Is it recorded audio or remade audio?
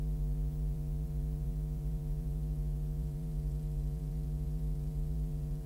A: remade